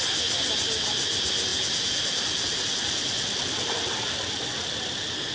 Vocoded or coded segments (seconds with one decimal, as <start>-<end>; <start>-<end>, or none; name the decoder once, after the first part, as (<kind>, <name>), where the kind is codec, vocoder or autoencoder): none